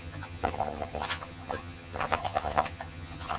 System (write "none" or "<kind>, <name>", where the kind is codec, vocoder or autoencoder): vocoder, HiFi-GAN